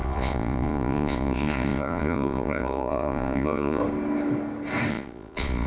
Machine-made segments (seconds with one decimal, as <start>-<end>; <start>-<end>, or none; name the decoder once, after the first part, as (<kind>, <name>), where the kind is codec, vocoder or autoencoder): 0.0-3.8 (vocoder, Vocos); 4.9-5.7